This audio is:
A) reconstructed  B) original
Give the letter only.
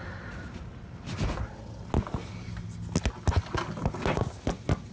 B